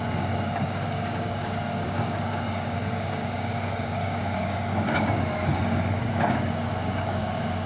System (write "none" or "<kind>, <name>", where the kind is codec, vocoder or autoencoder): codec, DAC